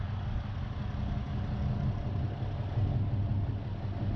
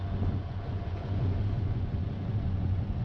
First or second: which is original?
first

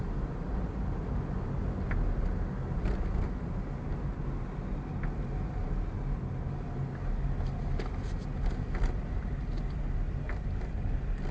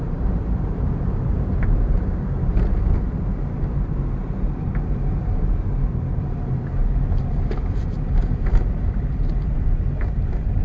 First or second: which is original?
first